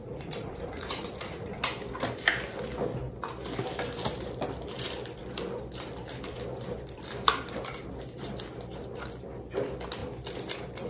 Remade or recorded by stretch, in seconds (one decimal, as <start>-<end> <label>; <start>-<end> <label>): 0.0-1.6 remade; 1.6-10.9 recorded